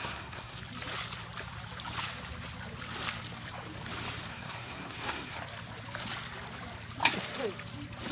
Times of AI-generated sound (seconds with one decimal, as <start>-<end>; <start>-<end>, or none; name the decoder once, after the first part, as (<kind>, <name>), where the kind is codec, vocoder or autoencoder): 0.0-0.6 (codec, SNAC); 4.3-5.4